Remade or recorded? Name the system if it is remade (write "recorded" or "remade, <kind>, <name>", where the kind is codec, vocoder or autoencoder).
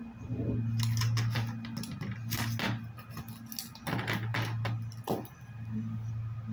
recorded